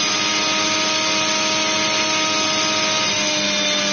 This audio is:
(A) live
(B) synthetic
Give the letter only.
A